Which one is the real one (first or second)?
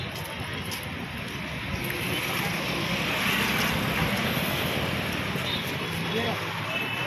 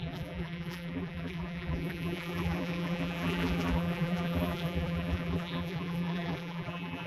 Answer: first